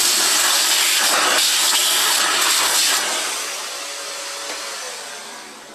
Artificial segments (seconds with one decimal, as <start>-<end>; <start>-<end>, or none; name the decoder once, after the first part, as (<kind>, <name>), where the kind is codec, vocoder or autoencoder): none